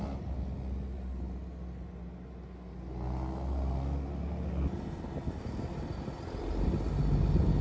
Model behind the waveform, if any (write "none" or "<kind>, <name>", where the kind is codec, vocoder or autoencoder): none